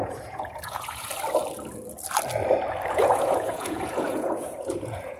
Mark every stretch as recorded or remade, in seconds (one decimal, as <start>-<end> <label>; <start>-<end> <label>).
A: 0.0-1.1 remade; 1.1-2.9 recorded; 2.9-5.2 remade